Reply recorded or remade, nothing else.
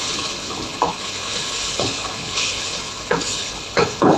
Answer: remade